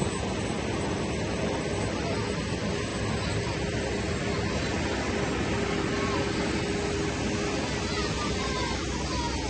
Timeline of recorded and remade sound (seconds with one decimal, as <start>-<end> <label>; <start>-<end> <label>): 0.0-9.5 recorded